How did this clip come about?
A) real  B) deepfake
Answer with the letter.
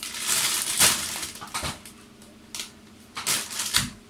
A